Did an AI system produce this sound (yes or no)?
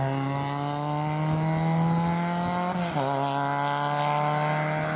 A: no